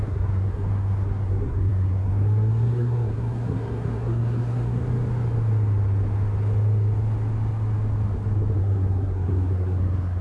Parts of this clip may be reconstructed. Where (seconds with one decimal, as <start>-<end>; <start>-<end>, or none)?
0.0-4.8; 8.6-10.2